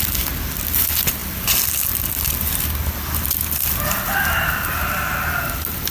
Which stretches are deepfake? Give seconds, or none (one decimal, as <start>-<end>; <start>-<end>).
none